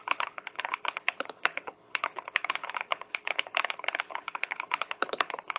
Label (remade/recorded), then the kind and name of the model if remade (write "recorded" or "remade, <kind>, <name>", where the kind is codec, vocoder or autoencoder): remade, codec, HILCodec